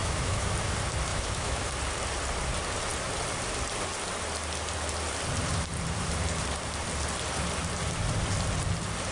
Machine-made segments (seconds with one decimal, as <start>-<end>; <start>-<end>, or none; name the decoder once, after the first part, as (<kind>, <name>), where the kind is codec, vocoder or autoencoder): 0.0-0.5 (autoencoder, DAC-VAE); 1.1-1.7